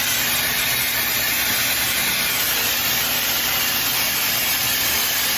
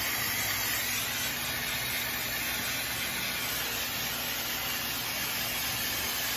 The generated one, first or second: first